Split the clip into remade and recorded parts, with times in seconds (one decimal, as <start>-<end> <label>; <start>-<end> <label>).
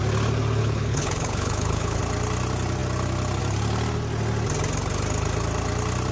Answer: 0.0-0.6 recorded; 0.6-2.0 remade; 2.0-6.1 recorded